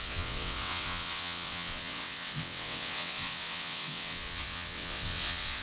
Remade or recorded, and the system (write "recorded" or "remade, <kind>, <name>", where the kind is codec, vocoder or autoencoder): remade, vocoder, WaveNeXt